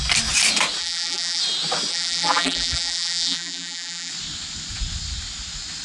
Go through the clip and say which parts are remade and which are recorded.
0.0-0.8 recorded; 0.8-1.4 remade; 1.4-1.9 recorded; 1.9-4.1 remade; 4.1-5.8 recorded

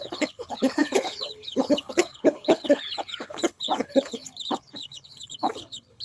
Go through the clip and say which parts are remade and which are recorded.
0.0-6.0 remade

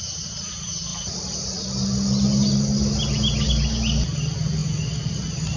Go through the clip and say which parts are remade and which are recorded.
0.0-5.6 recorded

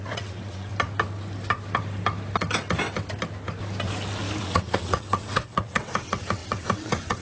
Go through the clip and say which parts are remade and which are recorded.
0.0-0.7 remade; 0.7-4.4 recorded; 4.4-7.2 remade

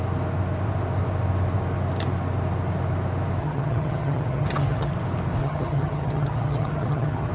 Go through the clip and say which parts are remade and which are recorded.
0.0-3.4 recorded; 3.4-4.9 remade; 4.9-5.4 recorded; 5.4-7.3 remade

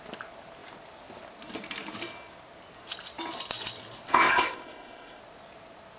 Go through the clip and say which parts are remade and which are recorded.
0.0-4.1 recorded; 4.1-5.2 remade; 5.2-6.0 recorded

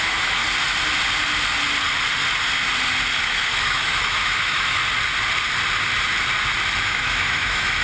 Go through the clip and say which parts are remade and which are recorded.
0.0-0.4 remade; 0.4-3.2 recorded; 3.2-4.8 remade; 4.8-6.8 recorded; 6.8-7.8 remade

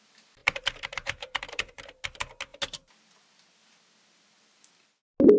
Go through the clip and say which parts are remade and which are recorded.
0.0-0.4 recorded; 0.4-2.0 remade; 2.0-5.4 recorded